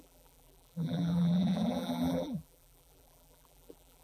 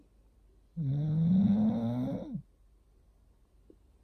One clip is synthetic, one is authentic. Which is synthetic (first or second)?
first